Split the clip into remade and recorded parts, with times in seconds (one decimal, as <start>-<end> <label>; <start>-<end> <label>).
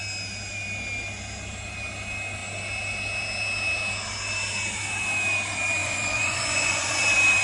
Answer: 0.0-5.8 recorded; 5.8-7.0 remade; 7.0-7.4 recorded